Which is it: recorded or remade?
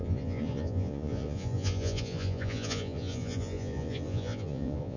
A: remade